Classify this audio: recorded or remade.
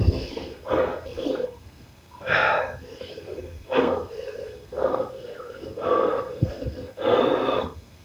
remade